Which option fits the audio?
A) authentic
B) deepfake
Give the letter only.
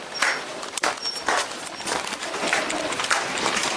A